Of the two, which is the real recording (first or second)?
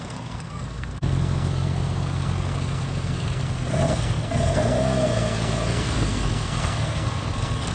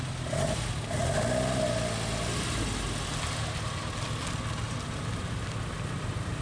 second